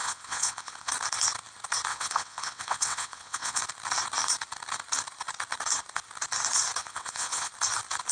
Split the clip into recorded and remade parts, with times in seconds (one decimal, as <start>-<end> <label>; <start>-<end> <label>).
0.0-0.9 remade; 0.9-1.9 recorded; 1.9-3.6 remade; 3.6-6.8 recorded; 6.8-7.5 remade; 7.5-8.1 recorded